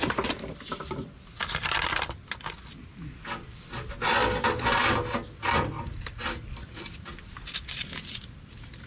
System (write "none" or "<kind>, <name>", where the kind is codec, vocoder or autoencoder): none